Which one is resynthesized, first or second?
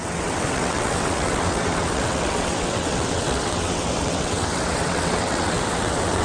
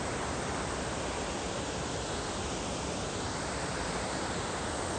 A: first